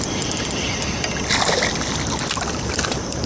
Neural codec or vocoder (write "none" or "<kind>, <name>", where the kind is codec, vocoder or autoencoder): none